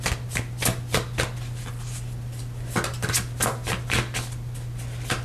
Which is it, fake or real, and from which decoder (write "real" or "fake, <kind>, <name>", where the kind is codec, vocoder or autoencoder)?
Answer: real